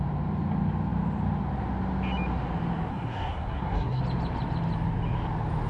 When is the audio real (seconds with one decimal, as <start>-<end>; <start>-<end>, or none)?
0.0-2.9; 4.0-5.7